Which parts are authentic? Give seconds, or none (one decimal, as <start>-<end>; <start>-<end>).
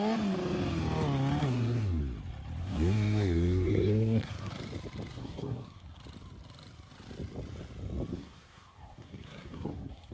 0.0-1.4; 2.0-2.6; 4.5-5.2; 6.0-8.1